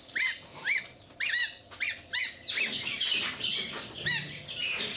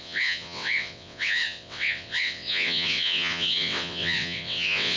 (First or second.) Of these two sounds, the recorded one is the first